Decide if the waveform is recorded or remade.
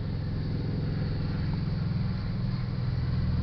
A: recorded